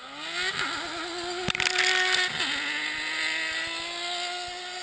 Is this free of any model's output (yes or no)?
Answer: yes